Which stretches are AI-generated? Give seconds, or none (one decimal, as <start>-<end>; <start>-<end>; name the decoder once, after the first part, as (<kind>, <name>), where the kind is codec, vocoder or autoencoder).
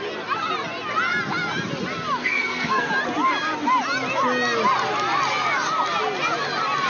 2.2-2.9 (codec, SNAC)